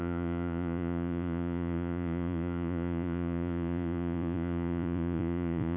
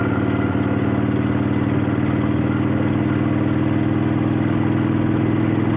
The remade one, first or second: first